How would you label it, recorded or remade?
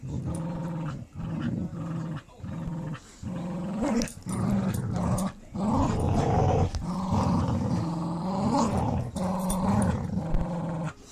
remade